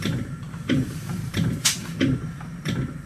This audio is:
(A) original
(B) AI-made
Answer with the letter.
B